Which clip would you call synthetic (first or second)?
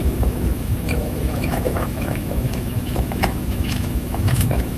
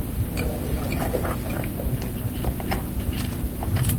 first